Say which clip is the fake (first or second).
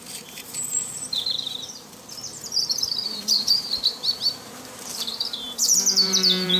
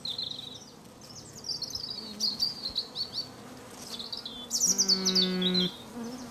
first